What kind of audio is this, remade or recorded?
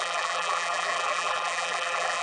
remade